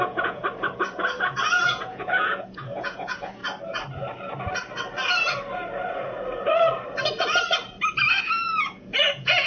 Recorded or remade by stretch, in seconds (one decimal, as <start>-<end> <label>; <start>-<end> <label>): 0.0-0.4 remade; 0.4-1.4 recorded; 1.4-3.4 remade; 3.4-8.2 recorded; 8.2-9.5 remade